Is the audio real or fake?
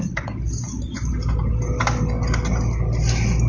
real